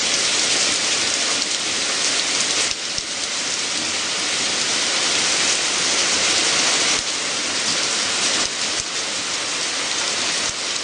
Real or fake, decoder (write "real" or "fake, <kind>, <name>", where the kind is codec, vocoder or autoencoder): real